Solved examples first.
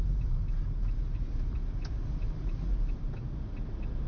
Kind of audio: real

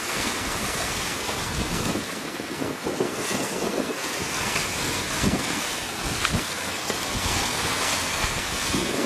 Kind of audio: fake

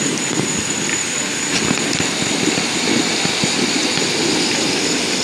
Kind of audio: real